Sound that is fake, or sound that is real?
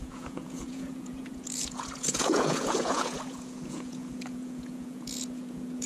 fake